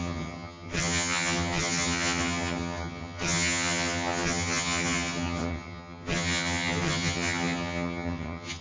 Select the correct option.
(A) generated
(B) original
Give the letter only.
A